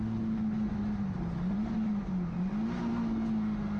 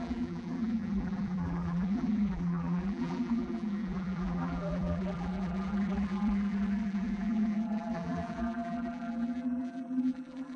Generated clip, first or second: second